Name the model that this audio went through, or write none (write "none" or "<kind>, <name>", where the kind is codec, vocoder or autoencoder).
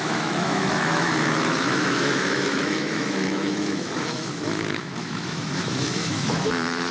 autoencoder, DAC-VAE